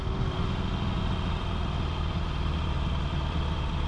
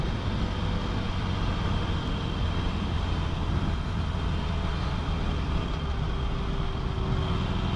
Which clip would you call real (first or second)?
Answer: second